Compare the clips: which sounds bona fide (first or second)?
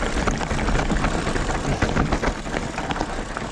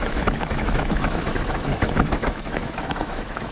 first